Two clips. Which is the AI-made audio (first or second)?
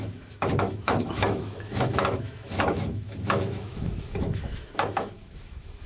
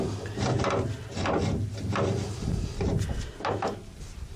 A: first